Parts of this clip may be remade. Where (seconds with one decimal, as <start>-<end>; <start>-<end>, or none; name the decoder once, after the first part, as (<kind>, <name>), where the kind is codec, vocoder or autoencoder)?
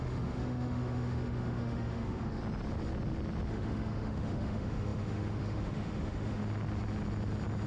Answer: 0.0-2.4 (autoencoder, DAC-VAE); 3.5-6.4